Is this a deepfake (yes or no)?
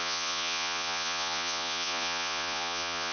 yes